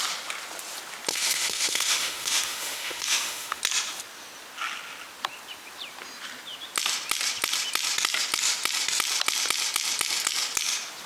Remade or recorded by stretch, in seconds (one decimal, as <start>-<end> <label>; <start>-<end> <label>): 0.0-1.1 recorded; 1.1-3.6 remade; 3.6-11.1 recorded